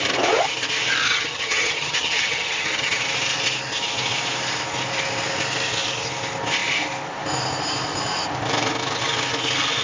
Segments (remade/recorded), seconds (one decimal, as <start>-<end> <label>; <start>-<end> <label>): 0.0-1.0 recorded; 1.0-3.0 remade; 3.0-9.8 recorded